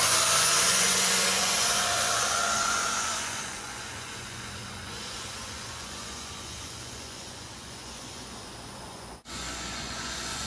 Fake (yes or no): yes